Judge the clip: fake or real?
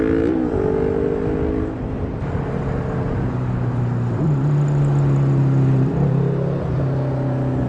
real